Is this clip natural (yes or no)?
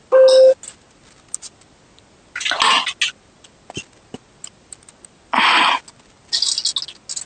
yes